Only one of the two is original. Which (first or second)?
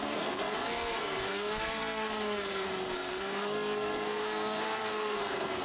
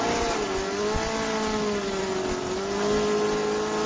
second